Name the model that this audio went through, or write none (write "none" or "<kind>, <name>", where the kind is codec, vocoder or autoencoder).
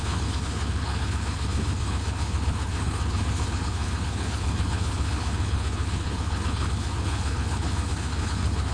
codec, HILCodec